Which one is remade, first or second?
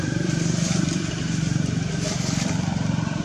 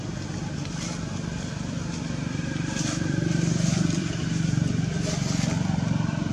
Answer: first